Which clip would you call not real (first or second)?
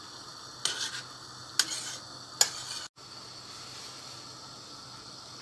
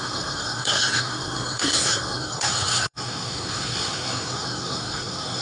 second